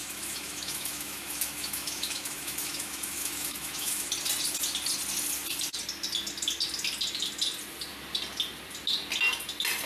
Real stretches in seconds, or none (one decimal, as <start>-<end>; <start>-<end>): 4.1-9.9